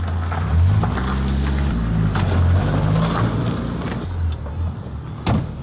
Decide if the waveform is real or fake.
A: real